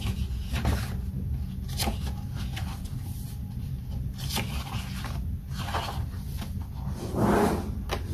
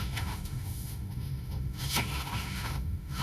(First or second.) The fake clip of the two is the second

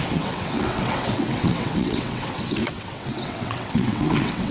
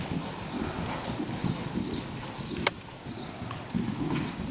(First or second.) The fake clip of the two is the first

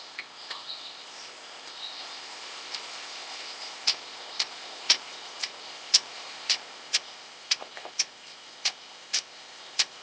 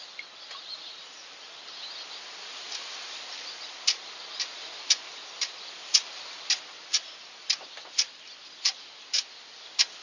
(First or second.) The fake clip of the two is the first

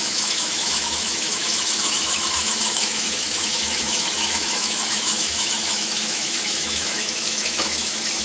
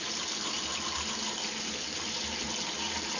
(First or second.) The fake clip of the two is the first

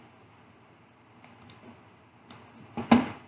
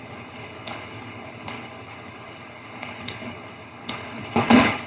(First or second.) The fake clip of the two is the second